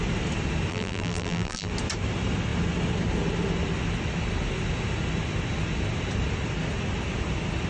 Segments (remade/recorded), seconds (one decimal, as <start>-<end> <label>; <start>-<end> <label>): 0.0-0.7 recorded; 0.7-1.7 remade; 1.7-7.7 recorded